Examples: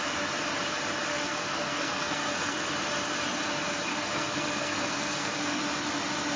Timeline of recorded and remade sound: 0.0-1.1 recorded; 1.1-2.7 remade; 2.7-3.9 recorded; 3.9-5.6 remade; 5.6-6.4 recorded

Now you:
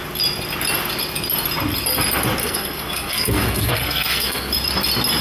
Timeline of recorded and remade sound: 0.0-2.4 recorded; 2.4-4.5 remade; 4.5-5.2 recorded

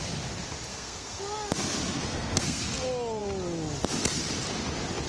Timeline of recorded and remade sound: 0.0-0.7 recorded; 0.7-1.2 remade; 1.2-1.9 recorded; 1.9-2.6 remade; 2.6-5.1 recorded

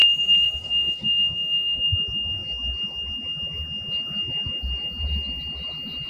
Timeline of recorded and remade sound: 0.0-1.8 remade; 1.8-6.1 recorded

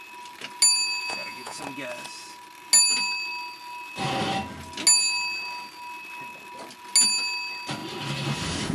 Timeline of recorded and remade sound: 0.0-1.0 recorded; 1.0-1.6 remade; 1.6-8.7 recorded